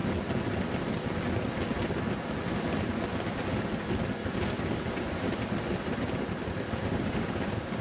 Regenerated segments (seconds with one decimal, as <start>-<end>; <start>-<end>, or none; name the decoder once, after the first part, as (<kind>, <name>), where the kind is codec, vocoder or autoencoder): none